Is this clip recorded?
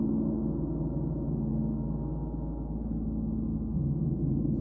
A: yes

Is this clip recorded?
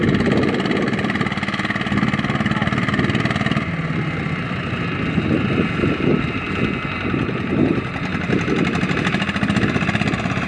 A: yes